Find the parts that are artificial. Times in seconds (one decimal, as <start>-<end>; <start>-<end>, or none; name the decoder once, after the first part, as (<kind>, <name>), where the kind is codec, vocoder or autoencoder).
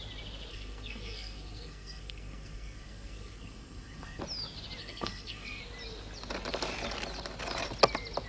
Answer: 0.5-4.2 (codec, SNAC); 4.8-5.6